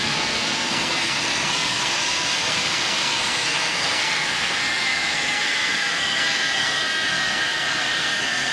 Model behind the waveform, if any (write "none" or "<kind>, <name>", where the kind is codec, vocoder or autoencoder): codec, SNAC